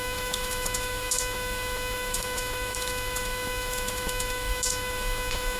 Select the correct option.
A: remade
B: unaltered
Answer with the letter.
A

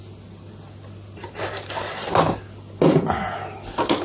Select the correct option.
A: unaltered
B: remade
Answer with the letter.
A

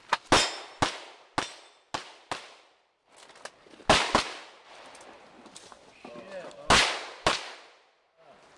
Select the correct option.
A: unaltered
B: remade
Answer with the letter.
A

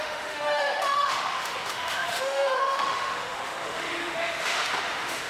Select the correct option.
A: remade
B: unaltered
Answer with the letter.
A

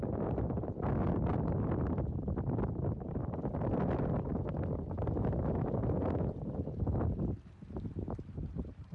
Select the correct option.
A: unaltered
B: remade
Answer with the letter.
A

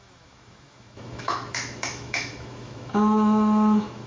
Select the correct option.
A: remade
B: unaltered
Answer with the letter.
A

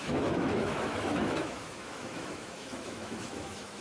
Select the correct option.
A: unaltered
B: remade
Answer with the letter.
B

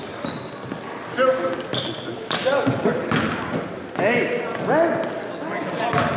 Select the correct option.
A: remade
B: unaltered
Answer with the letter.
B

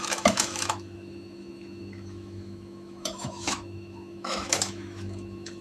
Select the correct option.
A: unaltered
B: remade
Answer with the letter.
B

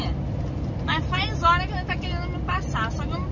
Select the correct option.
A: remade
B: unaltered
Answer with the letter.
B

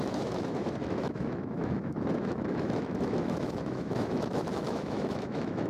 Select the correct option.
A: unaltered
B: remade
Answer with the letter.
B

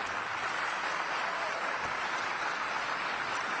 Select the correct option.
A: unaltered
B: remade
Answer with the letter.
A